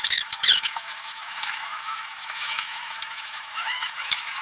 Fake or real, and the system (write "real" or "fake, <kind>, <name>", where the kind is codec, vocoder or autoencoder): fake, autoencoder, DAC-VAE